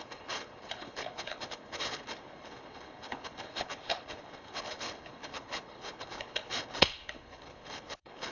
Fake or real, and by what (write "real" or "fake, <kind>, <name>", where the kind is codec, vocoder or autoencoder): fake, codec, HILCodec